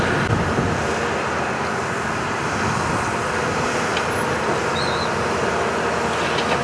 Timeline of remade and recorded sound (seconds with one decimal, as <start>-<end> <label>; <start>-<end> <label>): 0.0-6.6 recorded